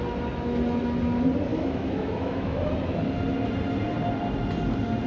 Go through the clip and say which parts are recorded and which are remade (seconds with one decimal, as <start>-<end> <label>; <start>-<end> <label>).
0.0-1.5 recorded; 1.5-2.7 remade; 2.7-5.1 recorded